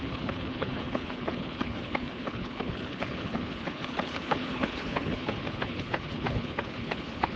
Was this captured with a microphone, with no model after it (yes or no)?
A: no